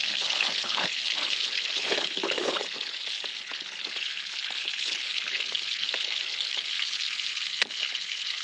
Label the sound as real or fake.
fake